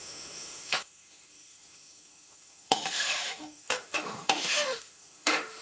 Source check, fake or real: fake